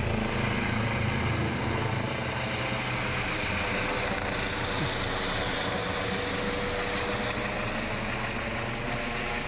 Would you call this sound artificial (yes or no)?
no